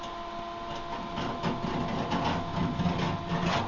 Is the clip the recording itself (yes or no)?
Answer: yes